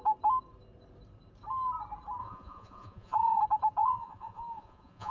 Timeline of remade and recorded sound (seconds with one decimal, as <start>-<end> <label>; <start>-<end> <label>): 0.0-2.2 recorded; 2.2-3.4 remade; 3.4-3.8 recorded; 3.8-5.1 remade